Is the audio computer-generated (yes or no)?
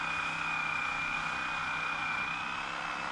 no